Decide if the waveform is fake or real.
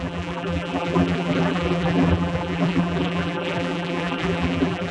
fake